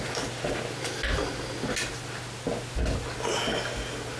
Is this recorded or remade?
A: recorded